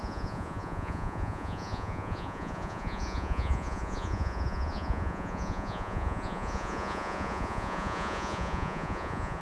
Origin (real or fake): fake